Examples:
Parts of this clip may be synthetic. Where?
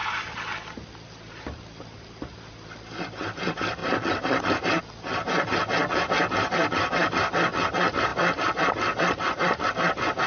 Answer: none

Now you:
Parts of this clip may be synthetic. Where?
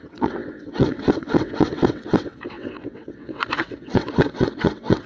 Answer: 0.0-5.1 (vocoder, WaveNeXt)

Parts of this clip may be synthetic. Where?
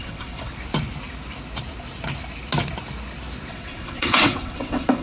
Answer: 0.0-0.5 (vocoder, WaveNeXt); 3.5-5.0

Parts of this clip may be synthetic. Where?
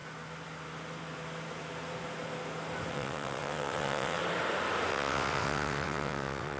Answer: 2.9-4.2 (vocoder, WaveNeXt); 4.9-6.6